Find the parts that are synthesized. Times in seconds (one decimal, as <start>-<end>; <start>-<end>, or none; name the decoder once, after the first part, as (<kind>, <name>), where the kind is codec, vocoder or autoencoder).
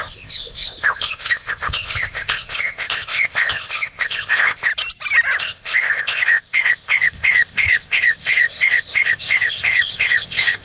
0.0-4.7 (codec, ZipCodec); 5.4-10.6